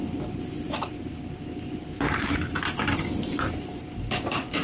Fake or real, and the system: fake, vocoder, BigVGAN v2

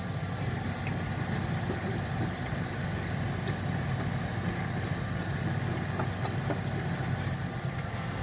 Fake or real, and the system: real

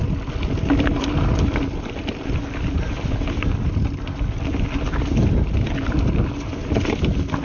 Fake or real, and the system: real